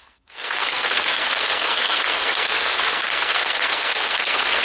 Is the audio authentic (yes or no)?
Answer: no